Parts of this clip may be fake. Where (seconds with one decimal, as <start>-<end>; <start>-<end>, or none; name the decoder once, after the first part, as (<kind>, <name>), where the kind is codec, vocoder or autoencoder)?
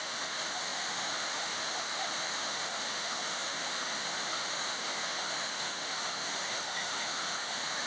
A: 0.0-7.9 (autoencoder, DAC-VAE)